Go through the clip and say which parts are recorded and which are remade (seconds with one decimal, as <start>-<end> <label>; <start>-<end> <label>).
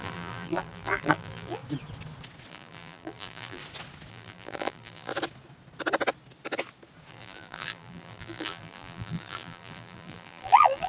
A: 0.0-1.6 remade; 1.6-2.5 recorded; 2.5-3.6 remade; 3.6-4.1 recorded; 4.1-5.1 remade; 5.1-7.1 recorded; 7.1-10.9 remade